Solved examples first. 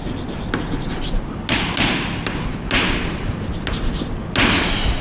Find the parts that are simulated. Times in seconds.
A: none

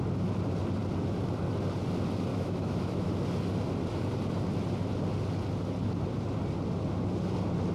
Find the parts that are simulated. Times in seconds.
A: 2.3-3.1 (autoencoder, DAC-VAE)

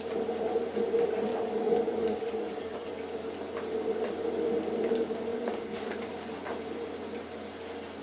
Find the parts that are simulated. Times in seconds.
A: 1.3-2.9 (codec, DAC); 5.3-5.9

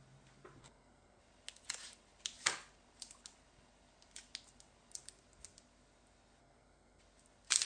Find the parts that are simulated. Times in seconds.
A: 0.6-1.2 (codec, SNAC); 6.4-7.0

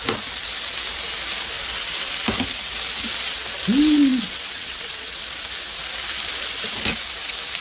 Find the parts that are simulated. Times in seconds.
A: 4.1-5.2 (vocoder, WaveNeXt)

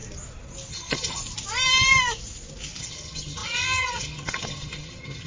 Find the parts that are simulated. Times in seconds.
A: 0.7-1.2 (vocoder, HiFi-GAN); 2.8-5.3